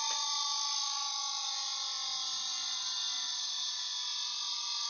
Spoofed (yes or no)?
no